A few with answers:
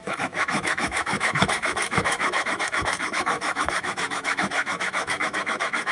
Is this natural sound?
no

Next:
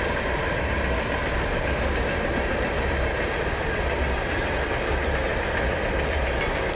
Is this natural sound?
yes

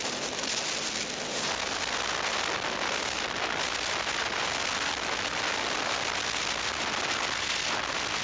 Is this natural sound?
yes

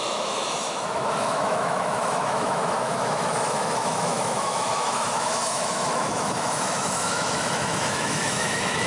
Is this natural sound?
no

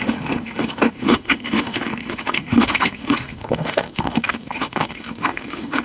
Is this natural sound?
no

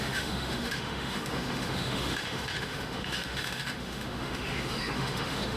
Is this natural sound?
no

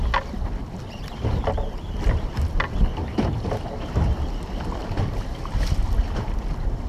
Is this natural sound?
yes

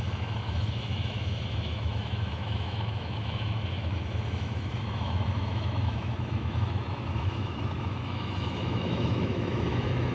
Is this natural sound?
no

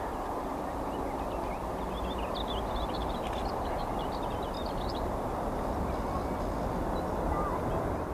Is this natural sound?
yes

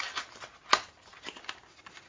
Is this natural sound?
yes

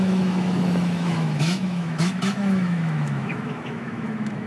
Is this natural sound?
no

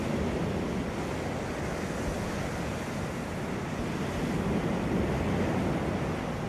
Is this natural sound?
yes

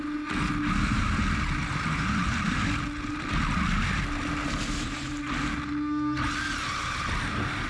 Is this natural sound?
yes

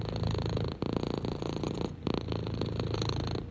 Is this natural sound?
yes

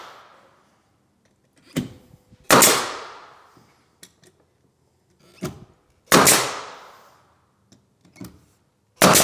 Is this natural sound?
yes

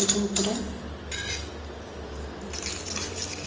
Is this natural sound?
yes